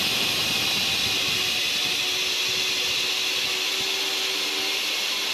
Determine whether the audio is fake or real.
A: real